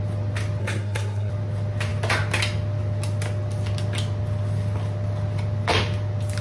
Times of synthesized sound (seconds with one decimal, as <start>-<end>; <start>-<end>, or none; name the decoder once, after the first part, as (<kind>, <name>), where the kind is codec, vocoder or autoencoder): 0.6-1.3 (codec, SNAC)